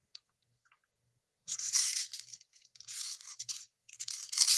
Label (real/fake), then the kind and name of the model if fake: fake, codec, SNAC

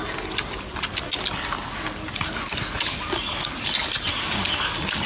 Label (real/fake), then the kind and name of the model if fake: real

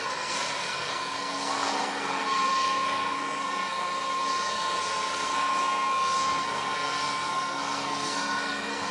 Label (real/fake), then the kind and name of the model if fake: fake, codec, SNAC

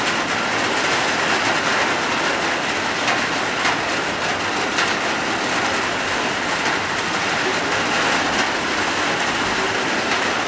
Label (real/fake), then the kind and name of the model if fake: real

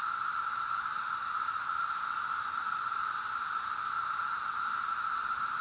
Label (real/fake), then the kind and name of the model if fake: real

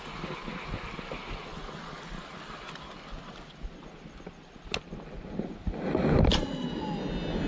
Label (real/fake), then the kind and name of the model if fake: real